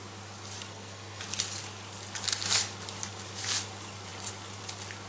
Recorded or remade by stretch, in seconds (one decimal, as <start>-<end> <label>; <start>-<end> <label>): 0.0-0.7 recorded; 0.7-1.2 remade; 1.2-5.1 recorded